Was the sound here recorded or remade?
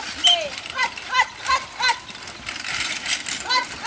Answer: recorded